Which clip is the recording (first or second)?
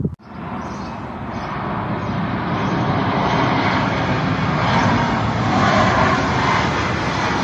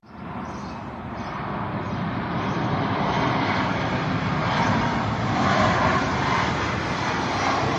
first